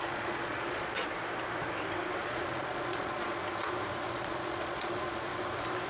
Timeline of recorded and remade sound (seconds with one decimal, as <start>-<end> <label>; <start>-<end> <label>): 0.0-1.0 remade; 1.0-2.2 recorded; 2.2-3.4 remade; 3.4-4.1 recorded; 4.1-5.3 remade; 5.3-5.9 recorded